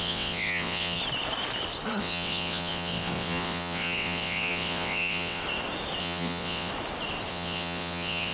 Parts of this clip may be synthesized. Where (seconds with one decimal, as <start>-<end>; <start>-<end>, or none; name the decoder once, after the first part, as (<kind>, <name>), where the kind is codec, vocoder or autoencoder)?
0.0-1.0 (vocoder, WaveNeXt); 2.0-5.4; 6.0-6.7; 7.3-8.3